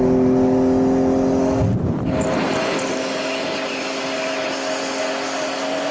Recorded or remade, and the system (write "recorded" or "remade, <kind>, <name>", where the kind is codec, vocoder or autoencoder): recorded